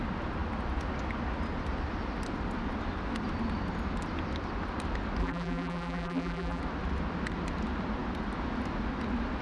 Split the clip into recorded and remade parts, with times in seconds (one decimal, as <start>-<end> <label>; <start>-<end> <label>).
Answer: 0.0-5.2 recorded; 5.2-6.6 remade; 6.6-9.4 recorded